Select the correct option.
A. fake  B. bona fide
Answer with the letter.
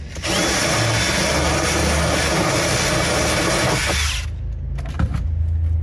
B